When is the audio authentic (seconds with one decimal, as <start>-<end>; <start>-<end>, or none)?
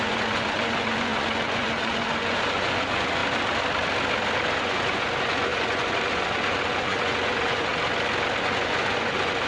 3.2-4.6; 7.7-8.4